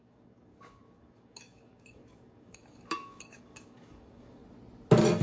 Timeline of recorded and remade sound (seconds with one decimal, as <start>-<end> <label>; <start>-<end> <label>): 0.0-4.4 remade; 4.4-5.2 recorded